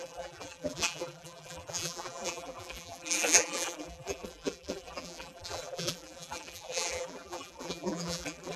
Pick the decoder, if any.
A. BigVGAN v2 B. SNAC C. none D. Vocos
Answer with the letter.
A